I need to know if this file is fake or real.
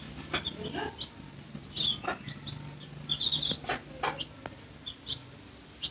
real